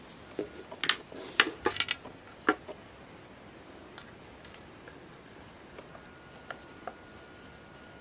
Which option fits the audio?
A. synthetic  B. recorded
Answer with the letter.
B